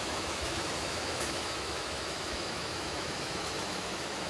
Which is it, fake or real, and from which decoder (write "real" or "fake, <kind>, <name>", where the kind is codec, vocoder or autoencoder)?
fake, autoencoder, DAC-VAE